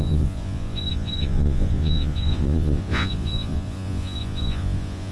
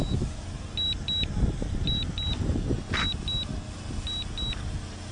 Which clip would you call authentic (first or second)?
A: second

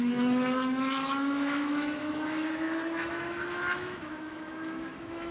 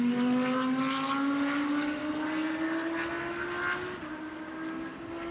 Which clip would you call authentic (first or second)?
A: second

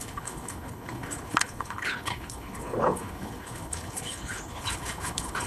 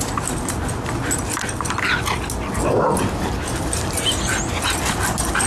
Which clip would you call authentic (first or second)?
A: second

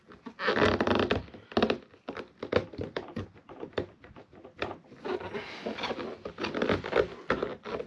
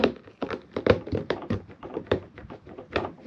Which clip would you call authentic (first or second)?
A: first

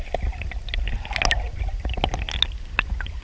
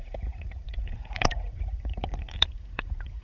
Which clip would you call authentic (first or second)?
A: first